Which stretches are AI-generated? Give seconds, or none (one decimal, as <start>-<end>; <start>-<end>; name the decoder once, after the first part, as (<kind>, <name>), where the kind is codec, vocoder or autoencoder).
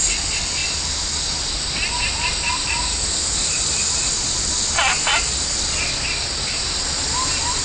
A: none